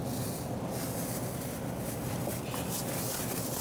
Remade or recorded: recorded